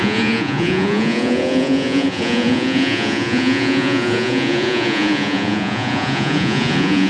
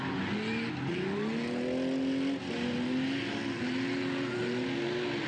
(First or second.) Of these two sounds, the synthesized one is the first